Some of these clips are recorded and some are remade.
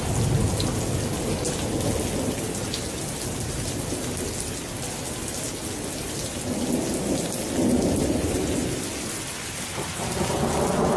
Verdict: recorded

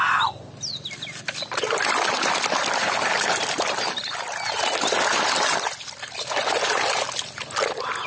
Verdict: recorded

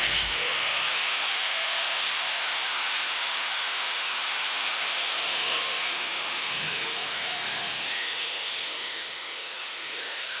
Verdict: remade